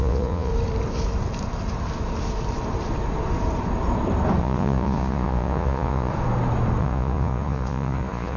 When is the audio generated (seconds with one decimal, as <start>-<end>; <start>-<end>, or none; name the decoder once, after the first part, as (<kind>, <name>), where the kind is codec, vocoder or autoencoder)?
0.0-0.5 (vocoder, Vocos); 4.4-6.1; 6.8-8.4